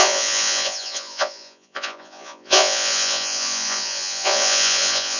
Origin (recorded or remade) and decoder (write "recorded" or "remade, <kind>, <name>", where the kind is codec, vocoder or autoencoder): remade, vocoder, Vocos